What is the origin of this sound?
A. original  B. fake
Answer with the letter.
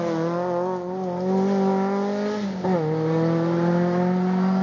A